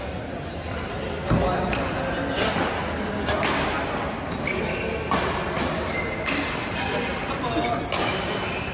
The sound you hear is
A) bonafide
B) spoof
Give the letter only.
A